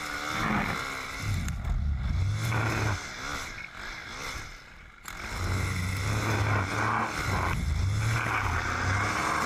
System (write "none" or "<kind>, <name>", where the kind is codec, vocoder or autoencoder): none